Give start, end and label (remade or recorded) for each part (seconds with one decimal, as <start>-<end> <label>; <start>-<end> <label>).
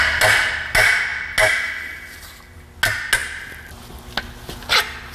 0.0-5.1 recorded